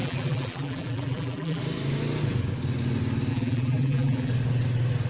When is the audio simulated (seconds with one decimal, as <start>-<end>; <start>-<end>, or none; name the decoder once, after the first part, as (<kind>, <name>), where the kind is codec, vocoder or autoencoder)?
0.0-1.6 (vocoder, BigVGAN v2); 3.3-4.3